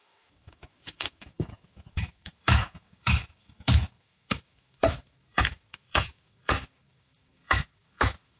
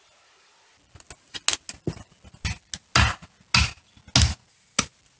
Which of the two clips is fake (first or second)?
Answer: first